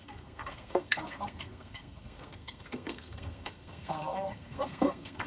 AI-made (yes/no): yes